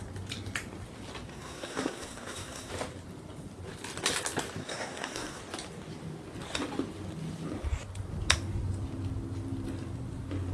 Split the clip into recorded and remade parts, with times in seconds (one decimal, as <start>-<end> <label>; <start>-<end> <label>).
0.0-1.3 recorded; 1.3-2.7 remade; 2.7-4.6 recorded; 4.6-5.4 remade; 5.4-10.5 recorded